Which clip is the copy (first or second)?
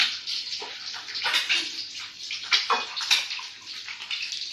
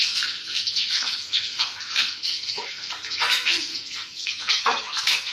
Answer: second